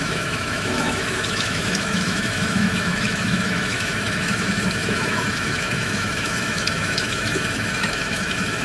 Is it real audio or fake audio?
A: fake